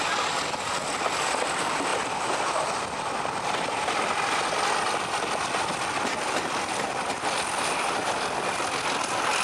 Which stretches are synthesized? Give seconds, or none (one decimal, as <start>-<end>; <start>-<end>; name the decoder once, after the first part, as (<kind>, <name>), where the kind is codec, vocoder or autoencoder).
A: none